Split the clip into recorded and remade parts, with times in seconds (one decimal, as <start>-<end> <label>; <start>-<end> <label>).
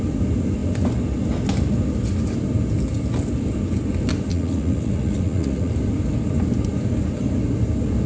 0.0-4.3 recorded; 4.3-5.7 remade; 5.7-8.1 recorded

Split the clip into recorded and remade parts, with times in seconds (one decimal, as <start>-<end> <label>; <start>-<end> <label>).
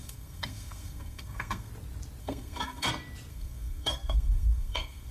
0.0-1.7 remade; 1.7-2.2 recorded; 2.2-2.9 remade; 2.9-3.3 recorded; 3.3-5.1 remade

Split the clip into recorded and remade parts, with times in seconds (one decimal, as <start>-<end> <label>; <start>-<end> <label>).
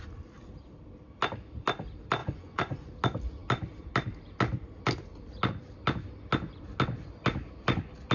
0.0-2.2 recorded; 2.2-2.9 remade; 2.9-8.1 recorded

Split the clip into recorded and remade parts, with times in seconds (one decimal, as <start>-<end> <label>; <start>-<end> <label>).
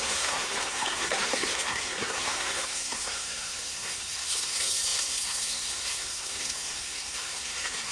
0.0-7.9 remade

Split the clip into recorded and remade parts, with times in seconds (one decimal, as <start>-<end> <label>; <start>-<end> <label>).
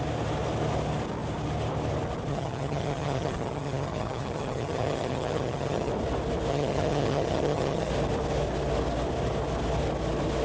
0.0-2.3 recorded; 2.3-5.9 remade; 5.9-6.5 recorded; 6.5-7.9 remade; 7.9-10.4 recorded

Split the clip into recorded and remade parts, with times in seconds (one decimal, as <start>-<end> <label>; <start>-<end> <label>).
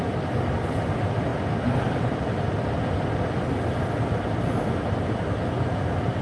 0.0-6.2 recorded